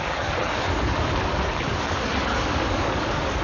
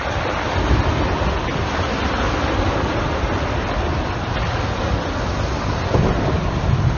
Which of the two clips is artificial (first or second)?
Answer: first